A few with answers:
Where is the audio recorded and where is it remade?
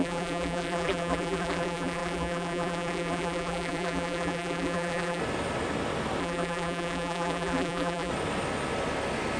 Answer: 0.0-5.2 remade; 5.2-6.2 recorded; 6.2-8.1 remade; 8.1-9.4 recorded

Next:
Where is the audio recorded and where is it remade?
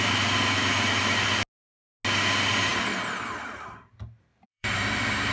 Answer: 0.0-4.3 recorded; 4.3-5.3 remade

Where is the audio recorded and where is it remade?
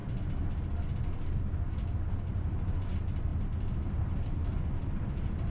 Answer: 0.0-5.5 recorded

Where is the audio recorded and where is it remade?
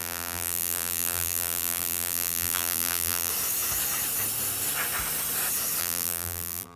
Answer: 0.0-3.3 remade; 3.3-5.8 recorded; 5.8-6.8 remade